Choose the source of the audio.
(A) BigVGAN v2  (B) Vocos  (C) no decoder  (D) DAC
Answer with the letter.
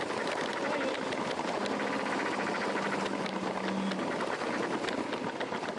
C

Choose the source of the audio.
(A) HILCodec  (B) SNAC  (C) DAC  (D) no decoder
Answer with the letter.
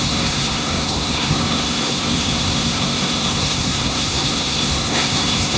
B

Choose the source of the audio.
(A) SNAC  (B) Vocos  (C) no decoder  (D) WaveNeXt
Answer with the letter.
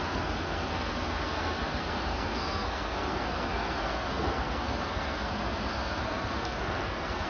A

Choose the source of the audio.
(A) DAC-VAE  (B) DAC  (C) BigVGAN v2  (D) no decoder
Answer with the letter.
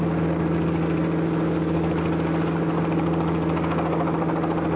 D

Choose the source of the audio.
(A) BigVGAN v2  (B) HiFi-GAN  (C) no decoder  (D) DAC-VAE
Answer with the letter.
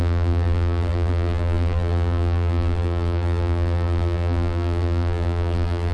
A